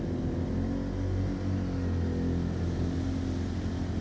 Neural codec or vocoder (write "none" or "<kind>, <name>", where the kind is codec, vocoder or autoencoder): none